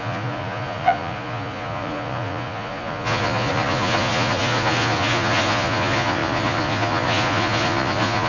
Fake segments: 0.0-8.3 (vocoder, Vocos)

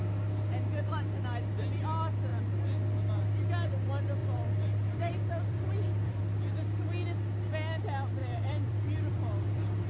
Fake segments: 4.2-6.2 (vocoder, BigVGAN v2); 8.2-9.9

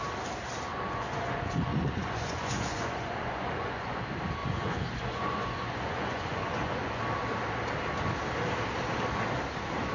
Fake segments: 0.7-4.0 (vocoder, Vocos); 4.4-7.0

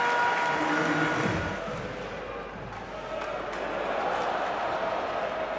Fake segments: none

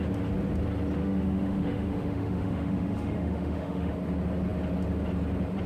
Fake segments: 1.0-3.9 (autoencoder, DAC-VAE)

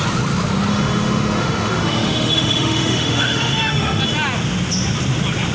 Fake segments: 0.7-4.0 (autoencoder, DAC-VAE)

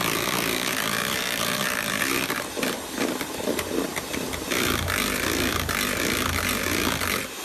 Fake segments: none

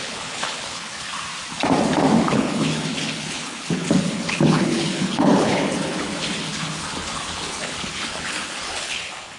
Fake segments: 0.0-1.1 (codec, HILCodec); 2.3-9.4